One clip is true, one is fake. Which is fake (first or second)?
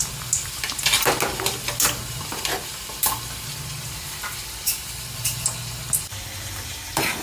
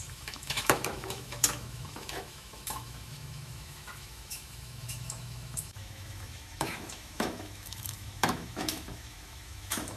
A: second